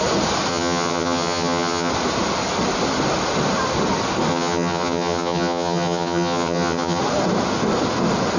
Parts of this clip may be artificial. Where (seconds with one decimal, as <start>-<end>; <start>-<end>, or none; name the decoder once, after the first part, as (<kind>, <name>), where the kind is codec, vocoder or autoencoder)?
0.5-1.9 (vocoder, HiFi-GAN); 4.3-7.0